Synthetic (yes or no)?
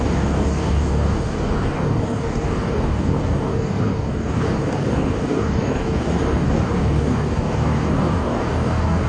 yes